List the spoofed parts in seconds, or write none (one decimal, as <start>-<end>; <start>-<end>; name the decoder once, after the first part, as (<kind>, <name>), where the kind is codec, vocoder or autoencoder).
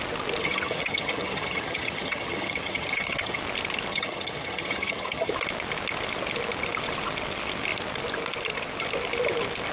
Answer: 0.4-3.4 (vocoder, HiFi-GAN); 3.9-5.3